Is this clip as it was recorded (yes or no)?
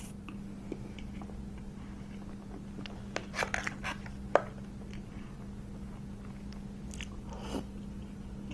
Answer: yes